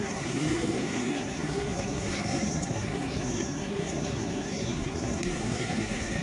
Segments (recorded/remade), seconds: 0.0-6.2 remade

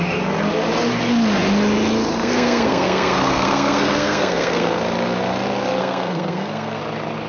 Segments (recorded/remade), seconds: 0.0-2.1 recorded; 2.1-4.8 remade; 4.8-5.8 recorded; 5.8-6.8 remade; 6.8-7.3 recorded